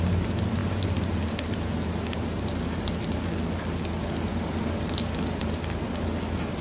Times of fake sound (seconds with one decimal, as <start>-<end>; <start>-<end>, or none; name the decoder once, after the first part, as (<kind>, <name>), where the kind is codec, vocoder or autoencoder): 0.6-4.6 (vocoder, BigVGAN v2)